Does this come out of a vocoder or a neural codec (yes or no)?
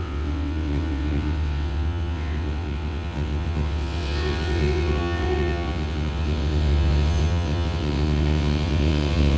yes